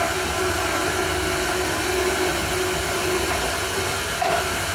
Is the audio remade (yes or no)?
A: no